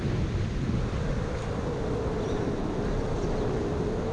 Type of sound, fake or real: real